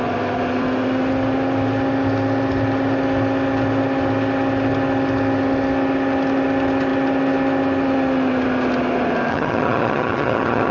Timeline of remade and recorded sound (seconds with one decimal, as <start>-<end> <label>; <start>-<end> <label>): 0.0-9.3 recorded; 9.3-10.7 remade